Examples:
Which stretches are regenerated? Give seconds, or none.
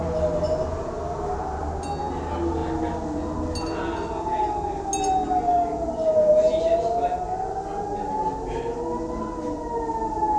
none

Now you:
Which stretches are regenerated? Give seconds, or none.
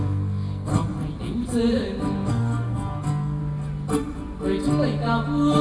0.0-0.7 (codec, SNAC); 2.3-3.4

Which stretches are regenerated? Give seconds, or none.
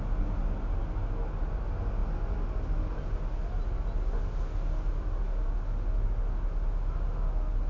none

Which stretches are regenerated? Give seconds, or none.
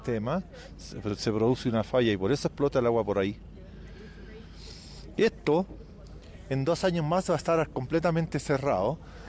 none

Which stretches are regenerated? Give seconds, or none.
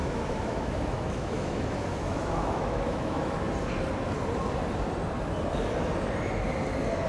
0.0-3.4 (autoencoder, DAC-VAE)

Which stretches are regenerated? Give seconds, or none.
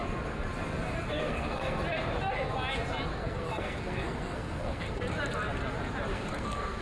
1.1-1.8 (codec, SNAC); 3.2-5.0; 6.1-6.8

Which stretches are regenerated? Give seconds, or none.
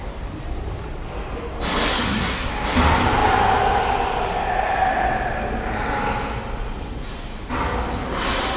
1.9-2.5 (codec, SNAC)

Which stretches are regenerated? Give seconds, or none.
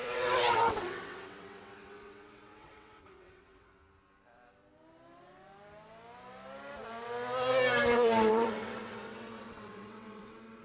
0.0-3.8 (vocoder, WaveNeXt); 8.3-10.6